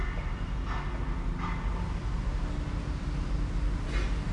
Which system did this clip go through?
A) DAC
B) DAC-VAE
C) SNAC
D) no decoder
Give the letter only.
D